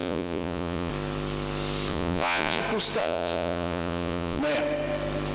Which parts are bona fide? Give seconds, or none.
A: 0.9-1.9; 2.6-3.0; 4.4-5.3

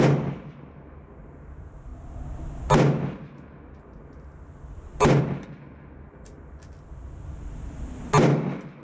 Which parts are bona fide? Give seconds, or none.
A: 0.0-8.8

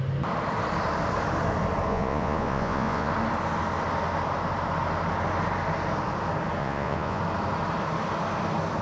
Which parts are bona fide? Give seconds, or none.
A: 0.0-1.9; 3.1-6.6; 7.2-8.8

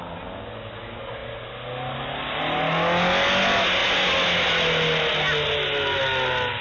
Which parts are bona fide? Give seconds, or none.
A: 0.0-6.6

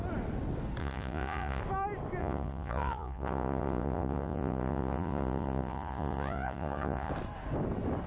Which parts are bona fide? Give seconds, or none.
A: 0.0-0.8; 1.6-2.2; 7.1-8.1

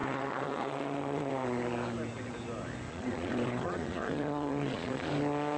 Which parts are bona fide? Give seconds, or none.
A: 1.3-2.9; 5.1-5.6

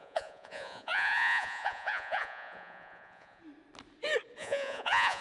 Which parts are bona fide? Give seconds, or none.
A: 3.4-4.4

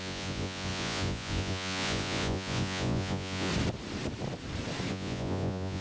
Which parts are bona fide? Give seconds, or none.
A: 3.5-4.9